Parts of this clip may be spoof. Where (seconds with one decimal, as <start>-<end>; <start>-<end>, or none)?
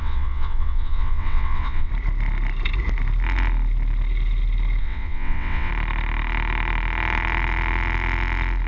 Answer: 0.0-1.9; 4.8-5.7